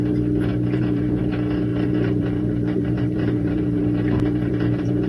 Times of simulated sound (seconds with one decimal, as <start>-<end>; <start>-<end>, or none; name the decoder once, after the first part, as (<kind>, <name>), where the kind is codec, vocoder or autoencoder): 0.5-1.2 (vocoder, BigVGAN v2); 1.7-5.1

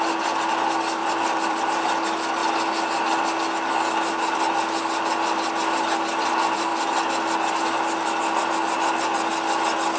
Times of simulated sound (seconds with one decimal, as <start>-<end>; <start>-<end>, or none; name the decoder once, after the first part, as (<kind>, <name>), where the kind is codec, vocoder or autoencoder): 1.0-1.6 (vocoder, BigVGAN v2)

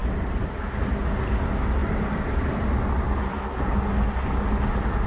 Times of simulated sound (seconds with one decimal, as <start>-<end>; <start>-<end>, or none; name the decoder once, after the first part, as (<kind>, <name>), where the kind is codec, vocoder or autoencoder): 1.8-3.6 (vocoder, BigVGAN v2)

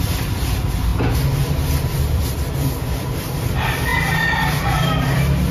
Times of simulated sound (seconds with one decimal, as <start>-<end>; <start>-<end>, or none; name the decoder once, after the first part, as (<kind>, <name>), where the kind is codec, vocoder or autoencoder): 0.0-0.9 (vocoder, BigVGAN v2); 2.1-3.9; 4.8-5.5

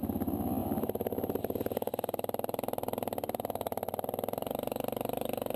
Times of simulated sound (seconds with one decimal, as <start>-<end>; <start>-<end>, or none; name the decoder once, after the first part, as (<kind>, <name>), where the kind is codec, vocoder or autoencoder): 0.6-1.4 (vocoder, BigVGAN v2)

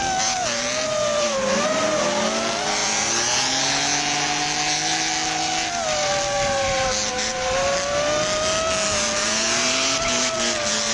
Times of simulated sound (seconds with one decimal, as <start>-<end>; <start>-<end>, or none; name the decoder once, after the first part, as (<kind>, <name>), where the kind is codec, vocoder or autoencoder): none